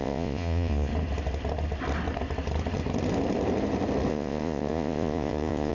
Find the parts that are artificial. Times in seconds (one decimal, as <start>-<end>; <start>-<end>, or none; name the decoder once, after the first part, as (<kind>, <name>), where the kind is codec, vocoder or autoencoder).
0.0-0.9 (vocoder, Vocos); 4.1-5.7